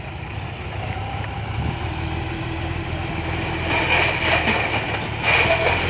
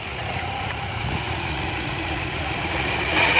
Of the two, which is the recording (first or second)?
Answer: first